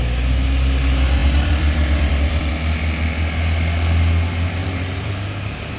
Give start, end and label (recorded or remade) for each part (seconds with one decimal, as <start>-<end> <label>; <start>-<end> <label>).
0.0-1.2 recorded; 1.2-2.5 remade; 2.5-4.6 recorded; 4.6-5.1 remade; 5.1-5.8 recorded